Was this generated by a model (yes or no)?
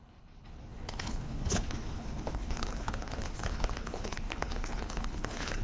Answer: yes